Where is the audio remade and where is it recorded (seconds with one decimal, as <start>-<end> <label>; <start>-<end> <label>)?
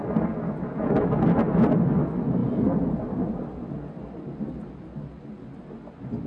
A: 0.0-6.3 recorded